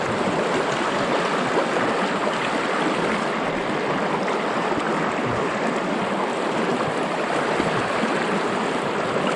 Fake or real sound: real